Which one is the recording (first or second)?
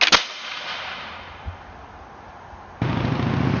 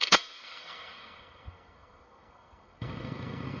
first